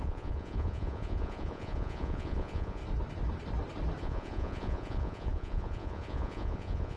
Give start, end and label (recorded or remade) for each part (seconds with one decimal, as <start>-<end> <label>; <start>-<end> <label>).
0.0-2.8 remade; 2.8-4.0 recorded; 4.0-7.0 remade